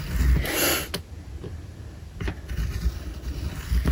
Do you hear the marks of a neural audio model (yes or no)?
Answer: no